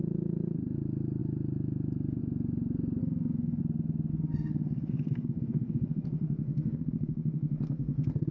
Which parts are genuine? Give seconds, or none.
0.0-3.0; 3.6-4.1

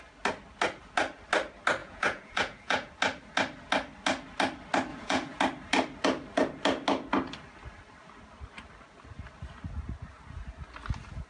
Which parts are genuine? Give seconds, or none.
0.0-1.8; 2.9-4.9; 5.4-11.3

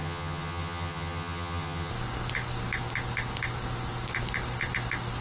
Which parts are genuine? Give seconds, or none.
1.9-5.2

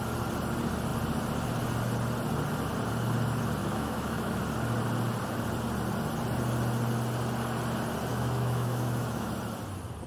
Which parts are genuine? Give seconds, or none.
0.0-3.6; 4.4-8.1; 9.3-10.1